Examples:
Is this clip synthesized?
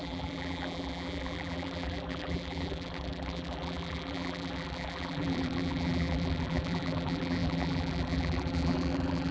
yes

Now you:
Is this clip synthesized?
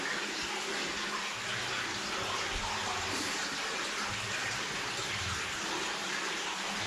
no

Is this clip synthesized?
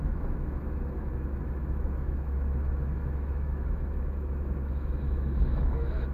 yes